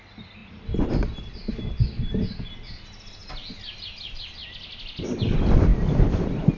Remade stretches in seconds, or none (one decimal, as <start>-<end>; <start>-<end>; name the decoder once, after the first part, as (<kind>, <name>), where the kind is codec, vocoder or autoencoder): none